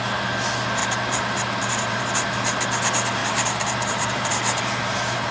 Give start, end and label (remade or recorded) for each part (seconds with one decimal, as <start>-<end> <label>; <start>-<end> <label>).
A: 0.0-0.8 recorded; 0.8-2.0 remade; 2.0-3.2 recorded; 3.2-5.3 remade